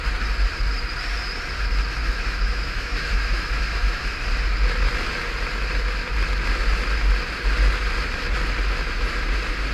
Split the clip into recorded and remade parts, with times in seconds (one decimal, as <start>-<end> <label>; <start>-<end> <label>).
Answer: 0.0-2.0 recorded; 2.0-4.0 remade; 4.0-9.7 recorded